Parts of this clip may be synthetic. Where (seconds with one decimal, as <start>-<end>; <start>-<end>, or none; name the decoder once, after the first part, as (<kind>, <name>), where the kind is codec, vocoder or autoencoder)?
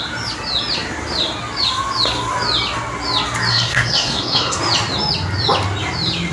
3.5-4.6 (codec, SNAC)